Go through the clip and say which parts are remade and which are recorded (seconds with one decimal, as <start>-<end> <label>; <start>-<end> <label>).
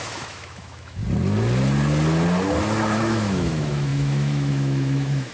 0.0-1.0 remade; 1.0-3.0 recorded; 3.0-5.3 remade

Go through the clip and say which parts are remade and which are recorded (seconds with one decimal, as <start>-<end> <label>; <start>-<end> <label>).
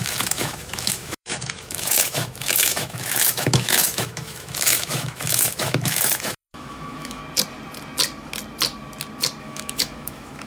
0.0-7.2 remade; 7.2-9.4 recorded; 9.4-10.5 remade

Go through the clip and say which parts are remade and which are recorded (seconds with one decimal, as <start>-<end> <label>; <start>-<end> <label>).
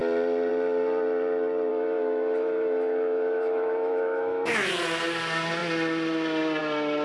0.0-1.7 recorded; 1.7-4.7 remade; 4.7-7.0 recorded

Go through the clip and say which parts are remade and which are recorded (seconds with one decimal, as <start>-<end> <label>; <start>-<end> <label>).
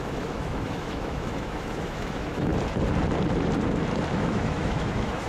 0.0-2.5 remade; 2.5-4.1 recorded; 4.1-5.3 remade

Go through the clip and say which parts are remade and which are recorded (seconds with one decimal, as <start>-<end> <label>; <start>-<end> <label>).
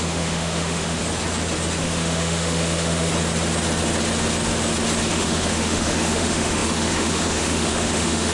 0.0-1.0 remade; 1.0-1.8 recorded; 1.8-3.1 remade; 3.1-5.1 recorded; 5.1-8.3 remade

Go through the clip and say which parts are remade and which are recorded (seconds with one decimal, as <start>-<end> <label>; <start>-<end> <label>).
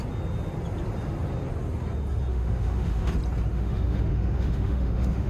0.0-2.3 recorded; 2.3-3.1 remade; 3.1-3.5 recorded; 3.5-5.3 remade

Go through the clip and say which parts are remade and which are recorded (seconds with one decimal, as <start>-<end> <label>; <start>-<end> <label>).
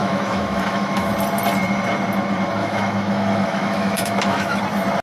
0.0-1.1 remade; 1.1-2.6 recorded; 2.6-4.6 remade; 4.6-5.0 recorded